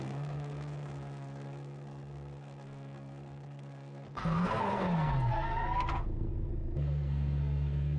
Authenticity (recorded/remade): remade